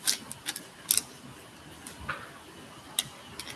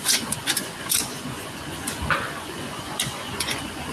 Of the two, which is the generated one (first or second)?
second